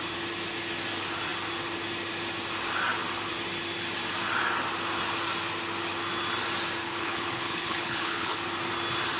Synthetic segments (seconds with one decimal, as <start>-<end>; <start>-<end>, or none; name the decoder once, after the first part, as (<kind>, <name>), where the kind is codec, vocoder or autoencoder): 6.8-8.4 (codec, HILCodec)